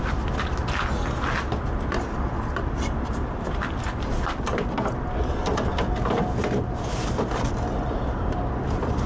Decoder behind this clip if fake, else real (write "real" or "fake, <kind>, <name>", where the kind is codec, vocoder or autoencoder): real